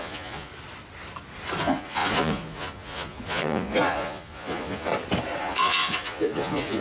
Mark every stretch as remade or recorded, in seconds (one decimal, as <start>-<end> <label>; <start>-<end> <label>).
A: 0.0-0.5 remade; 0.5-1.6 recorded; 1.6-4.9 remade; 4.9-5.4 recorded; 5.4-6.8 remade